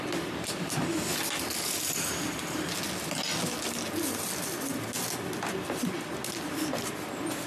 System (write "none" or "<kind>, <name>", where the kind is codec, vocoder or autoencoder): none